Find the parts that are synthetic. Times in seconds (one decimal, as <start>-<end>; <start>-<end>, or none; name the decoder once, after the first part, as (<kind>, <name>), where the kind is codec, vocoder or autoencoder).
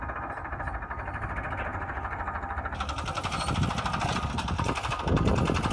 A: none